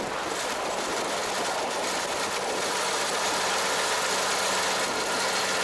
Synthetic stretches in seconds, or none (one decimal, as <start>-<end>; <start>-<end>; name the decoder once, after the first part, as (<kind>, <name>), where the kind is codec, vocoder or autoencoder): none